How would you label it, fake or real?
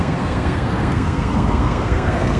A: fake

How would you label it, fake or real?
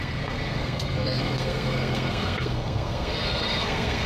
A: fake